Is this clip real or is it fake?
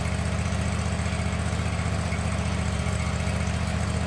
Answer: real